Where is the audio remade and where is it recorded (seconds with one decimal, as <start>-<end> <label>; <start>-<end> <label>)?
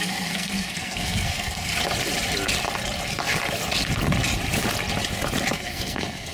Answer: 0.0-1.7 remade; 1.7-5.5 recorded; 5.5-6.3 remade